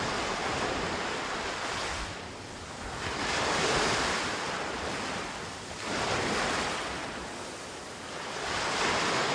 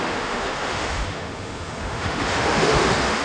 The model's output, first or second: second